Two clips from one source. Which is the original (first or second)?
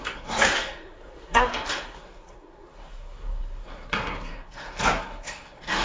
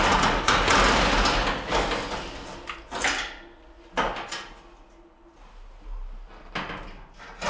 second